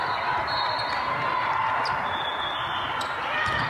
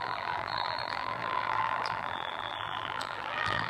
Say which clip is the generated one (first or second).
second